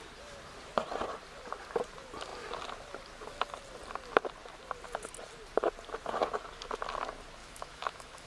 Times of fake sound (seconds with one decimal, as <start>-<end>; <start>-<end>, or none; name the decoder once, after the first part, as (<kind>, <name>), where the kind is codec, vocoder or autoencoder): 7.4-8.3 (autoencoder, DAC-VAE)